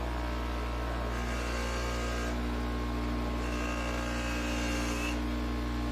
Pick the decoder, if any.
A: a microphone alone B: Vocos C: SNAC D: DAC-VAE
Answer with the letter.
A